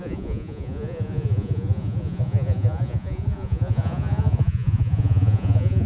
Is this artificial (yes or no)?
yes